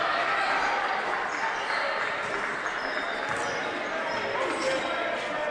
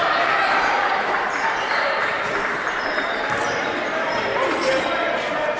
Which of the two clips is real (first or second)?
first